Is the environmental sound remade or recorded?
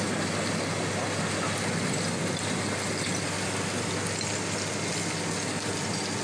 recorded